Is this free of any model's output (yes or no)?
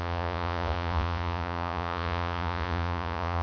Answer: no